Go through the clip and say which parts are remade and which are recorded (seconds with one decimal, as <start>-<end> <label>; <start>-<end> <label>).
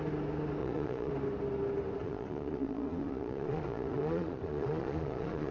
0.0-0.6 recorded; 0.6-1.1 remade; 1.1-2.0 recorded; 2.0-5.5 remade